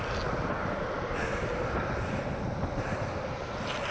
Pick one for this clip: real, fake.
real